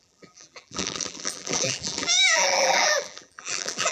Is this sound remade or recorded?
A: remade